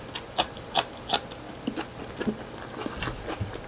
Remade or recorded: recorded